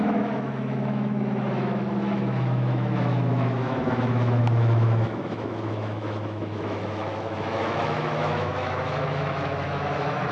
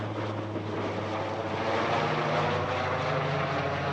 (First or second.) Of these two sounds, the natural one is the second